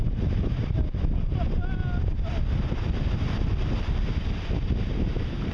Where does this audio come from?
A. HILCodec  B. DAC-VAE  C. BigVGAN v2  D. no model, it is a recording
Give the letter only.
D